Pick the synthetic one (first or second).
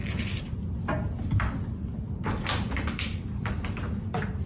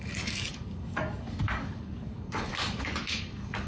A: second